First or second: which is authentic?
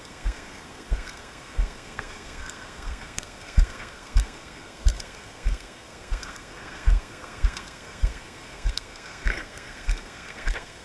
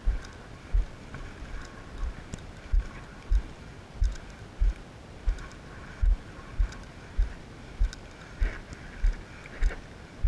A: second